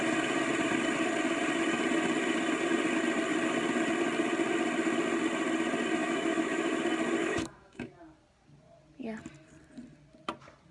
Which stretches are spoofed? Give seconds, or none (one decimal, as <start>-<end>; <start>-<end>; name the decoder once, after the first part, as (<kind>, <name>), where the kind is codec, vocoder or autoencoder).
6.0-6.8 (autoencoder, DAC-VAE); 7.2-7.9